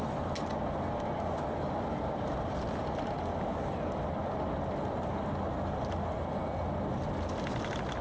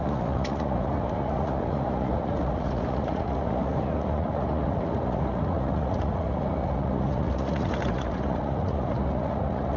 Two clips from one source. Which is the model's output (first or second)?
second